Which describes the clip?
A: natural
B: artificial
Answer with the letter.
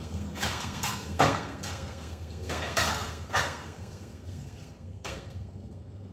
B